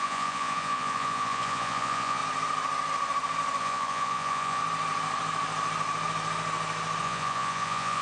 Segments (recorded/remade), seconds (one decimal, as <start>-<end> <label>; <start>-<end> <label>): 0.0-2.2 remade; 2.2-3.6 recorded; 3.6-4.6 remade; 4.6-7.0 recorded; 7.0-8.0 remade